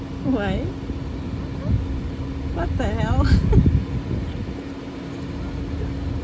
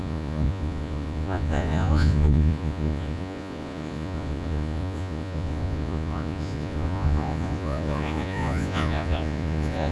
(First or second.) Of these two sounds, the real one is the first